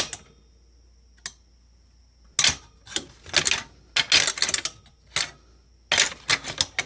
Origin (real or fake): real